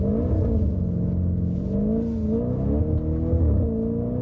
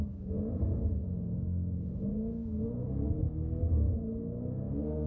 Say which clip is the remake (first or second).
second